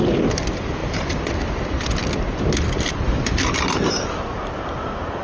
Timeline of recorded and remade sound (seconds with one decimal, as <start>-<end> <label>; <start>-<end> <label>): 0.0-5.2 recorded